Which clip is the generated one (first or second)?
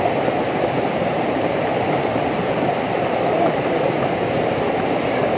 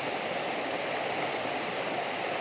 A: first